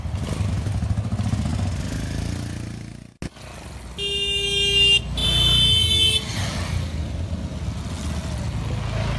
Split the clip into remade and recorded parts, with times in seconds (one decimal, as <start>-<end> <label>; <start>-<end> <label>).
0.0-9.2 recorded